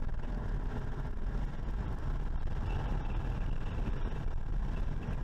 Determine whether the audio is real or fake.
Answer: real